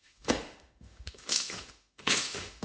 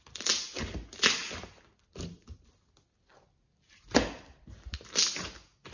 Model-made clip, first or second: first